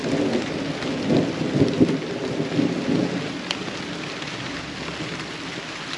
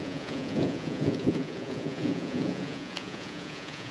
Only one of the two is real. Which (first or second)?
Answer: first